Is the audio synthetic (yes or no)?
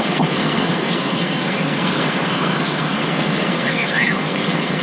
yes